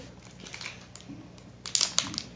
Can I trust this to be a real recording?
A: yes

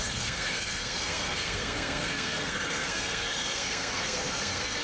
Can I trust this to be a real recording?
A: no